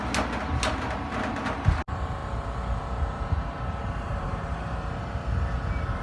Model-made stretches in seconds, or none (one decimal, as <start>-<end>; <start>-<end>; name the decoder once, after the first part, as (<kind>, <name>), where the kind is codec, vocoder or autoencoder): none